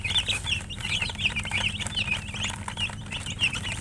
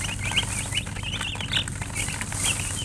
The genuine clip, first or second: second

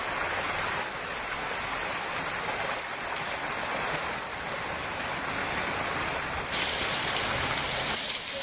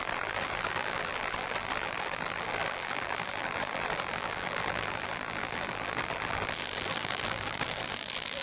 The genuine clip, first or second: first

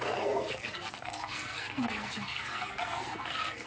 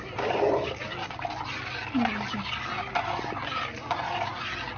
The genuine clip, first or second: second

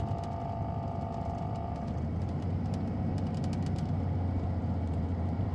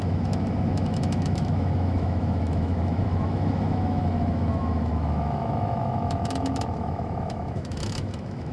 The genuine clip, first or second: first